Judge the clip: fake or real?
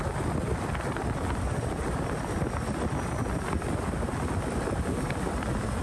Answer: real